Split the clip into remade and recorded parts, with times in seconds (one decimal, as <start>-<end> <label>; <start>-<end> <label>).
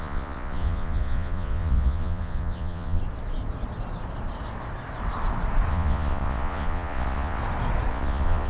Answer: 0.0-3.0 remade; 3.0-5.7 recorded; 5.7-7.4 remade; 7.4-7.9 recorded; 7.9-8.5 remade